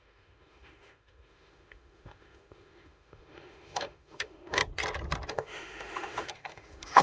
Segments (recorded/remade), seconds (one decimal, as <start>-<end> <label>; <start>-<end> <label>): 0.0-4.6 remade; 4.6-5.3 recorded; 5.3-7.0 remade